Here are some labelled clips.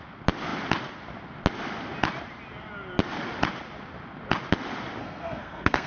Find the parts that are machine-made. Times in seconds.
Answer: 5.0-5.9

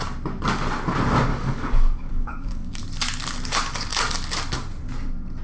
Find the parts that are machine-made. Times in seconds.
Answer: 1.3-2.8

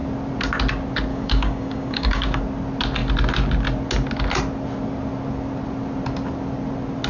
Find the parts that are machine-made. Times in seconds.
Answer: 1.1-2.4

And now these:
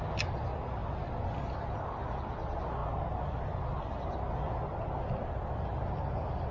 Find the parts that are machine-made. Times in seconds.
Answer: none

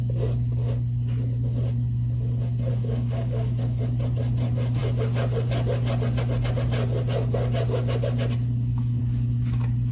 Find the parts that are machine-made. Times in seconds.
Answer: 2.7-3.8